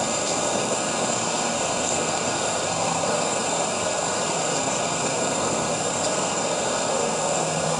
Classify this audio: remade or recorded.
remade